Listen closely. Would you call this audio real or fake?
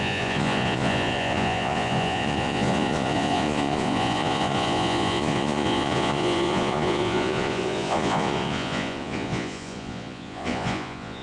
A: fake